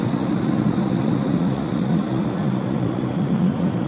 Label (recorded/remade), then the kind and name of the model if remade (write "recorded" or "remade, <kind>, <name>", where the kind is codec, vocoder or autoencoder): remade, vocoder, Vocos